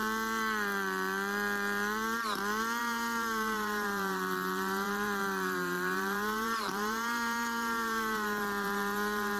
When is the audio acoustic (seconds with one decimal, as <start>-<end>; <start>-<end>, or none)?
0.0-2.8